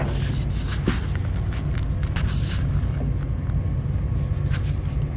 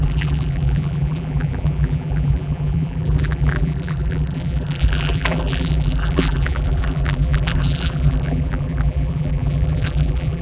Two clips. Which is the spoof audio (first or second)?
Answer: second